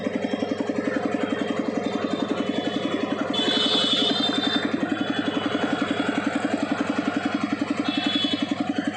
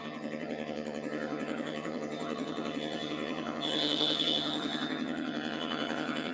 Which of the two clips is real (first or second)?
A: first